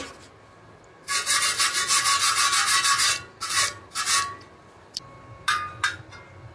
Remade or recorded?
recorded